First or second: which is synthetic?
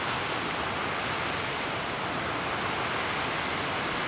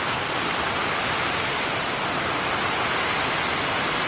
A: second